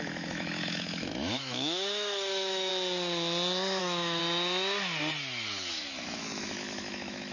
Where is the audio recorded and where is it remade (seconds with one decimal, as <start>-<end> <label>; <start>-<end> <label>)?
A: 0.0-2.7 remade; 2.7-3.8 recorded; 3.8-4.2 remade; 4.2-5.7 recorded; 5.7-7.3 remade